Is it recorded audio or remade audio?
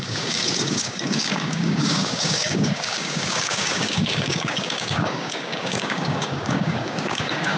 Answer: remade